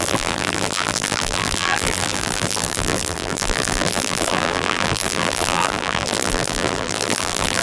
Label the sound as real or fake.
fake